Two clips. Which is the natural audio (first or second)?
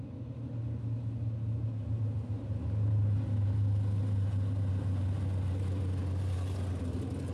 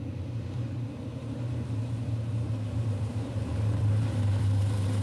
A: first